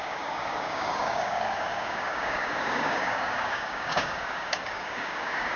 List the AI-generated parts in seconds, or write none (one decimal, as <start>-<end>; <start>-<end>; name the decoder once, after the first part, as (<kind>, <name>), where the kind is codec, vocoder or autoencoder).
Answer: 0.0-5.6 (codec, DAC)